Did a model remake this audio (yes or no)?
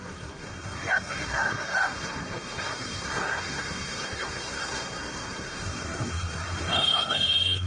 yes